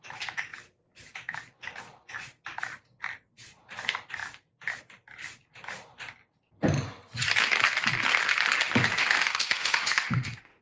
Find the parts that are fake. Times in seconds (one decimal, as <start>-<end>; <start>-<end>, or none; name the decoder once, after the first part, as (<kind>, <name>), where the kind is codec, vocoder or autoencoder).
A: 9.0-10.6 (autoencoder, DAC-VAE)